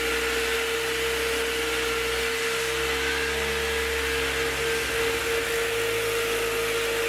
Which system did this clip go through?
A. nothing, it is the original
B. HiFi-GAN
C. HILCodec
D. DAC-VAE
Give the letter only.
A